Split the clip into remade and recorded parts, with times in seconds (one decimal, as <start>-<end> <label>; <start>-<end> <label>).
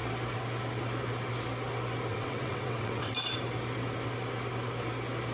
0.0-2.1 recorded; 2.1-3.1 remade; 3.1-5.3 recorded